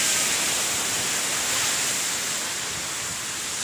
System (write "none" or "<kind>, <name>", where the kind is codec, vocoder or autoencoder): none